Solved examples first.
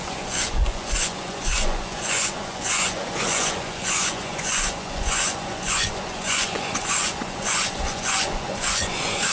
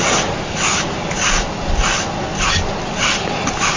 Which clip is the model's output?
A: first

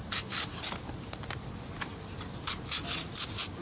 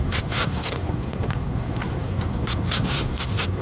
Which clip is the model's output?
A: second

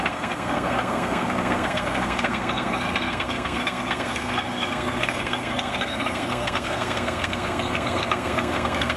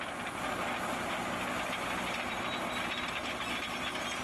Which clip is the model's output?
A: first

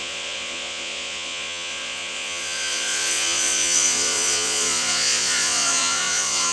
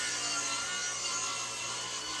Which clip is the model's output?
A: first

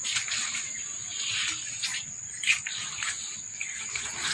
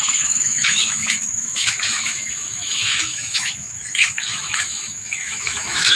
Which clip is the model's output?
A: second